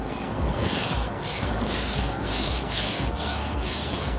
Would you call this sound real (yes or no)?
no